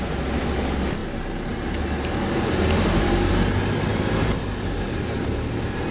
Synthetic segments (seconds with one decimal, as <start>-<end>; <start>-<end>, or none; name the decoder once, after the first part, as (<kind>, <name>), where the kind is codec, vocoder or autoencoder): 1.0-3.3 (vocoder, BigVGAN v2); 3.9-4.4